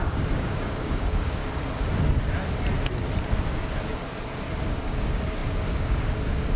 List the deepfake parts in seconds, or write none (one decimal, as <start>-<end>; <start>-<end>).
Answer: 0.0-1.4; 4.7-6.6